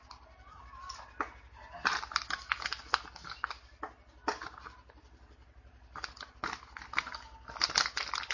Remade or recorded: recorded